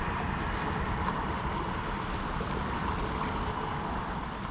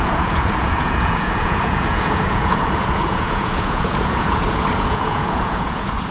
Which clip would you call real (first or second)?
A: first